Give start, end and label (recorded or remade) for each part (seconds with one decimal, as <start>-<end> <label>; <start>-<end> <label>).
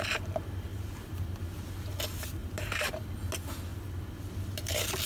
0.0-0.7 recorded; 0.7-1.7 remade; 1.7-2.4 recorded; 2.4-3.0 remade; 3.0-5.1 recorded